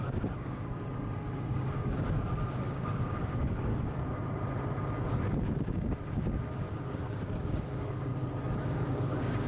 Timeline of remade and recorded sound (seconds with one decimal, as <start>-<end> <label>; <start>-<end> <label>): 0.0-3.7 remade; 3.7-5.5 recorded; 5.5-8.1 remade; 8.1-8.6 recorded; 8.6-9.5 remade

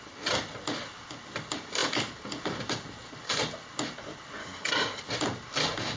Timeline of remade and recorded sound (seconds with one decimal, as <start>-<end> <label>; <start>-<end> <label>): 0.0-4.4 recorded; 4.4-5.0 remade; 5.0-6.0 recorded

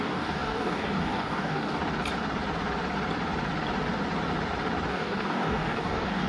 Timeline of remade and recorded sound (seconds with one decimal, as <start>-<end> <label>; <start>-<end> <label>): 0.0-1.8 remade; 1.8-4.9 recorded; 4.9-6.3 remade

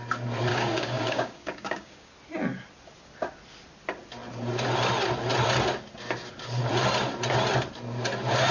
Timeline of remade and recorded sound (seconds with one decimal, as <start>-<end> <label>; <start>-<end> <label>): 0.0-0.5 recorded; 0.5-2.1 remade; 2.1-8.5 recorded

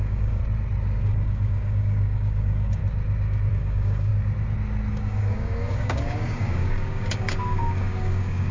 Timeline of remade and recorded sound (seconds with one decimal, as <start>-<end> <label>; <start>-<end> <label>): 0.0-0.4 remade; 0.4-1.0 recorded; 1.0-2.8 remade; 2.8-3.5 recorded; 3.5-4.1 remade; 4.1-4.9 recorded; 4.9-8.5 remade